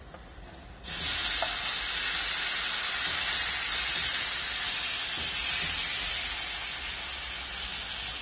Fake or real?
real